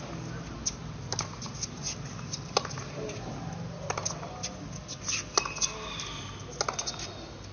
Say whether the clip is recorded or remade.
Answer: recorded